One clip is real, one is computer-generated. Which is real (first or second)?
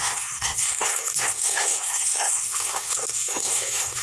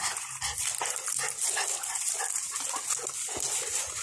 second